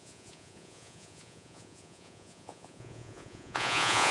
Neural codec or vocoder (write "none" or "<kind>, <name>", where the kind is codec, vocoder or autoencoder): vocoder, Vocos